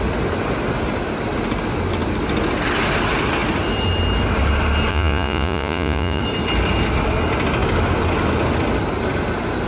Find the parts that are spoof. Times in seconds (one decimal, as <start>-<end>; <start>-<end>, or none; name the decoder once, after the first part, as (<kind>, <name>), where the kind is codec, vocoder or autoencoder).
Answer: 4.9-6.2 (vocoder, Vocos)

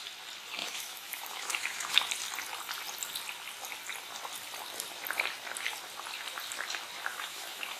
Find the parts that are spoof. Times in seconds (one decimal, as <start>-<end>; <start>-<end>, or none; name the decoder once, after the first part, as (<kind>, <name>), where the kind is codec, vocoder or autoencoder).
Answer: 0.6-2.0 (autoencoder, DAC-VAE); 7.1-7.8